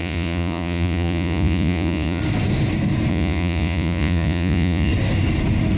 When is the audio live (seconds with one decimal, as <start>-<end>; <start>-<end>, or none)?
2.2-3.1; 4.9-5.8